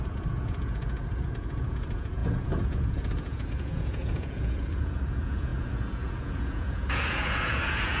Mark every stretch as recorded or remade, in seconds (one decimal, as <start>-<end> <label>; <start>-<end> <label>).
0.0-8.0 remade